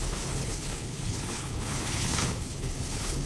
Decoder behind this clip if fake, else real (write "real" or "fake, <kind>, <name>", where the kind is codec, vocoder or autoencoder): fake, codec, HILCodec